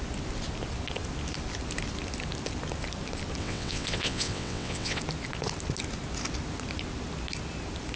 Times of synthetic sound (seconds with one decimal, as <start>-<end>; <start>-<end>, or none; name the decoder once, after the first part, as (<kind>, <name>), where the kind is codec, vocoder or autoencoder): 3.4-5.0 (vocoder, WaveNeXt)